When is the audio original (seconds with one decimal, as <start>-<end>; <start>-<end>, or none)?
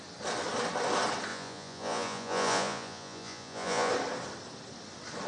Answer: 0.0-1.3; 3.9-5.3